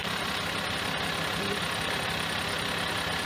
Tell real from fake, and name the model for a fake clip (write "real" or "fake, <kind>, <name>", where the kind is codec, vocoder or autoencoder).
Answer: real